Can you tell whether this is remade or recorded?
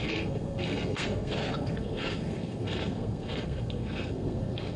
remade